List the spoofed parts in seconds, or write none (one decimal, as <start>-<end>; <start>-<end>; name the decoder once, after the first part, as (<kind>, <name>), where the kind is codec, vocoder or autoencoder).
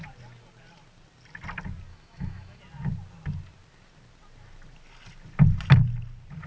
1.9-2.6 (autoencoder, DAC-VAE)